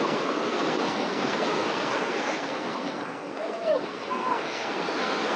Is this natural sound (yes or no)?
no